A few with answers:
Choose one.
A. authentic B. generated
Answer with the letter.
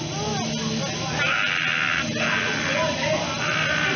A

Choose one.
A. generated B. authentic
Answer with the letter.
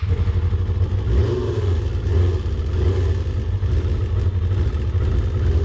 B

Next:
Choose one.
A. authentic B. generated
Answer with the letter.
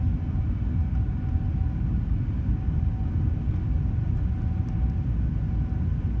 A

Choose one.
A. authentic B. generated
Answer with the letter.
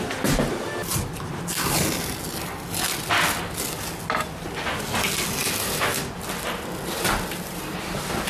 A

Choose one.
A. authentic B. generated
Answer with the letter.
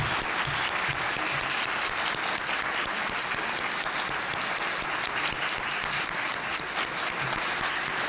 A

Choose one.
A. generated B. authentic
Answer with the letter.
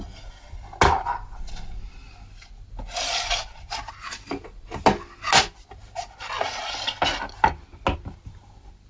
B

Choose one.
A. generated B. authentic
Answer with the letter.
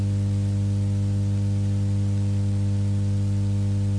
B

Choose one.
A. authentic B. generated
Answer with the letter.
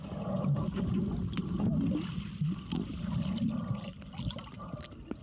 A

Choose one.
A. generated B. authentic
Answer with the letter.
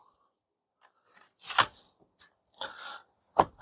B